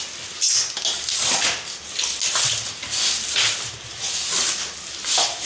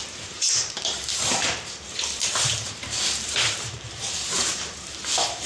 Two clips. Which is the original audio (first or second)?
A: first